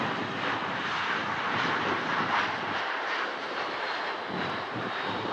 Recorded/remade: remade